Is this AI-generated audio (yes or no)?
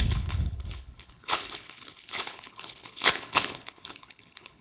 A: yes